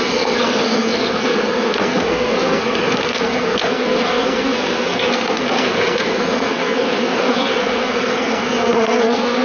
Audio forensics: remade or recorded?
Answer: remade